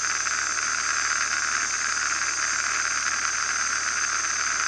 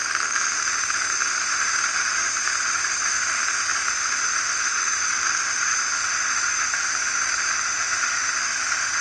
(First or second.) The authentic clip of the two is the first